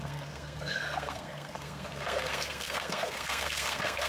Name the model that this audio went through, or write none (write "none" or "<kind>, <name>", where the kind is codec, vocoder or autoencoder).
codec, SNAC